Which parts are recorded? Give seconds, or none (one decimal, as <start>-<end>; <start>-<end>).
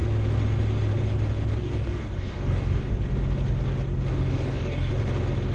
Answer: 0.0-1.6; 2.9-4.1; 4.9-5.5